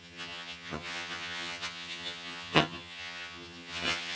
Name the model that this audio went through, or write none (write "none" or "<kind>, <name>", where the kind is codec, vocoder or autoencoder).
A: vocoder, HiFi-GAN